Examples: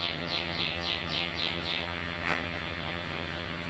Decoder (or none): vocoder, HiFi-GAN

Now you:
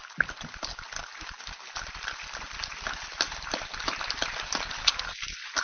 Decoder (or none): none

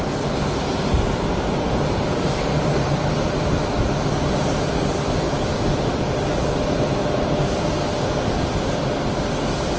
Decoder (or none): none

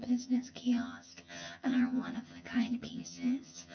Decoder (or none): vocoder, HiFi-GAN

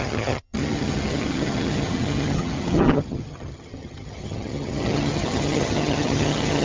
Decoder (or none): vocoder, HiFi-GAN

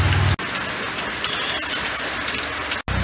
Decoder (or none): none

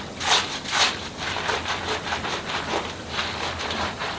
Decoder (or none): none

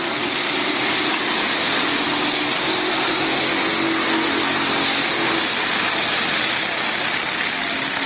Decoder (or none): none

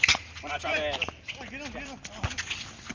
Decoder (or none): none